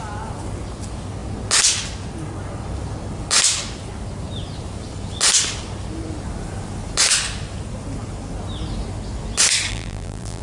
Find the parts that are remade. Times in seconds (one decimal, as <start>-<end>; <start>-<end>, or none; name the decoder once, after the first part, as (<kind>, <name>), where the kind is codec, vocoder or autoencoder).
9.7-10.4 (vocoder, BigVGAN v2)